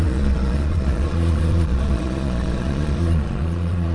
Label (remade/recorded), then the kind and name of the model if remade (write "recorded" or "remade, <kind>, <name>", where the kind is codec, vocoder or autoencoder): remade, vocoder, Vocos